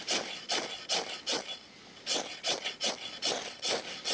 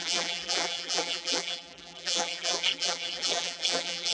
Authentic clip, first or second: first